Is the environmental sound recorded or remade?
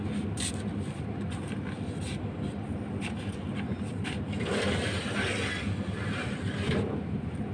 recorded